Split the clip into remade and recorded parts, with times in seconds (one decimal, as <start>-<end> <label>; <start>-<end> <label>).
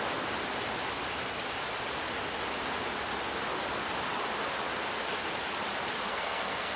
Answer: 0.0-6.1 recorded; 6.1-6.8 remade